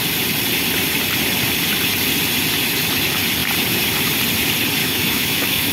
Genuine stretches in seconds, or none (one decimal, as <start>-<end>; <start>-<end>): 0.0-4.8